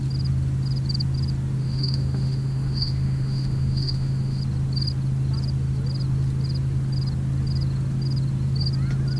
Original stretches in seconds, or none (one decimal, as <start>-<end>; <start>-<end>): 0.0-1.6; 4.4-9.2